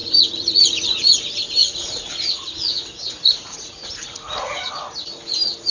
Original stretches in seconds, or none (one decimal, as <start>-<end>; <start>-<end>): 1.2-1.6; 4.7-5.7